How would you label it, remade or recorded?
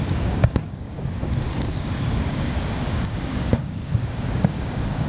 remade